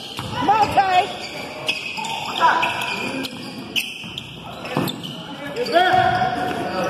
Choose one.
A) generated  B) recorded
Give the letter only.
B